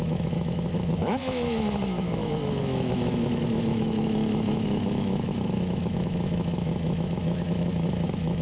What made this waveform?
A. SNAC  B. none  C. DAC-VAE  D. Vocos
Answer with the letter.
C